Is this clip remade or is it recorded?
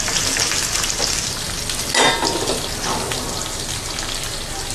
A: recorded